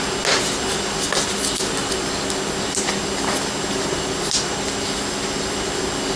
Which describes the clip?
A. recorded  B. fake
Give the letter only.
A